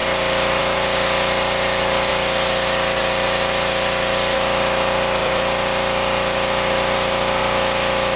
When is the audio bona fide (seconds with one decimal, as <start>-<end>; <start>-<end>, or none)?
0.0-5.2; 7.4-8.2